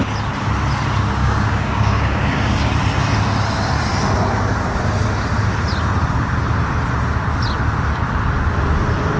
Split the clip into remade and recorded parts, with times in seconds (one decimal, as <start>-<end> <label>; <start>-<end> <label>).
0.0-1.2 recorded; 1.2-2.7 remade; 2.7-9.2 recorded